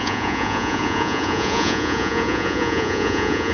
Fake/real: fake